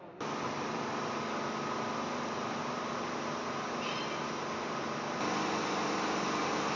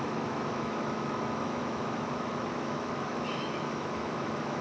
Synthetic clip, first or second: second